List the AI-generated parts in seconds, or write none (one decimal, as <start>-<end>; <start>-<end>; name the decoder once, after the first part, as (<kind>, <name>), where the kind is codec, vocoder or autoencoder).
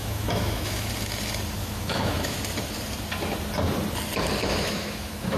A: 0.0-0.9 (autoencoder, DAC-VAE); 1.6-2.4; 4.4-5.4